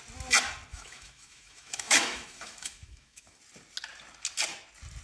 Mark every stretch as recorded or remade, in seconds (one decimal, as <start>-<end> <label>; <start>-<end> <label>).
0.0-0.7 recorded; 0.7-3.4 remade; 3.4-5.0 recorded